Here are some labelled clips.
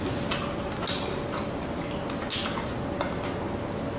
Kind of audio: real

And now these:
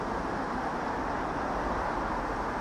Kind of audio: real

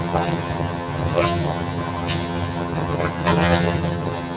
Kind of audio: fake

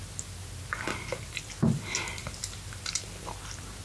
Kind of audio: real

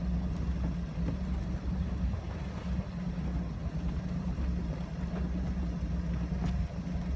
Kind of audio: real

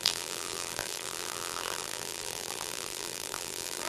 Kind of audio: fake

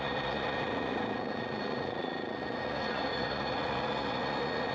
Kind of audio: fake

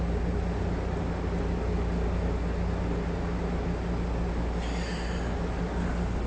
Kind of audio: real